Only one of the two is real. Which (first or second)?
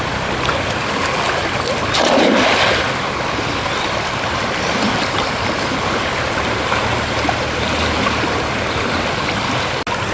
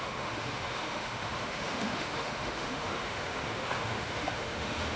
first